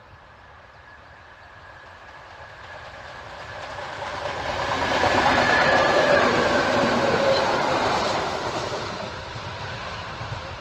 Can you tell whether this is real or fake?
fake